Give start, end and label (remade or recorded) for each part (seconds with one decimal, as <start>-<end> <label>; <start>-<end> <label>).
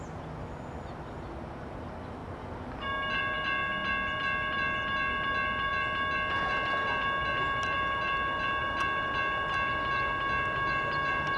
0.0-11.4 recorded